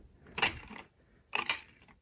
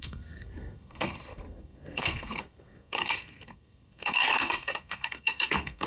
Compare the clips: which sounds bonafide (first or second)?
first